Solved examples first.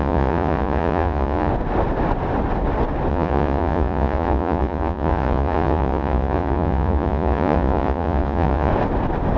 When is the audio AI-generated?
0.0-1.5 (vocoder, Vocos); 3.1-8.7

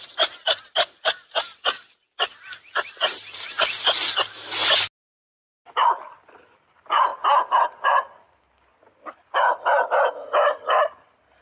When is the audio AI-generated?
none

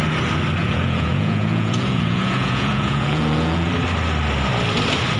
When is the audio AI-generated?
0.6-3.7 (vocoder, Vocos)

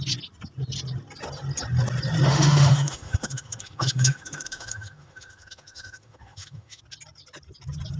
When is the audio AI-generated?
2.3-6.8 (autoencoder, DAC-VAE)

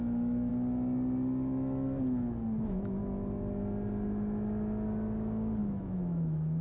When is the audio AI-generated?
0.0-0.5 (autoencoder, DAC-VAE); 2.6-3.0; 5.6-6.6

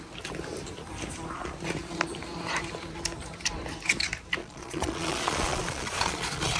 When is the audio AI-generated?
4.4-6.6 (vocoder, Vocos)